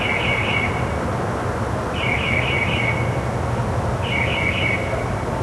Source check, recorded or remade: recorded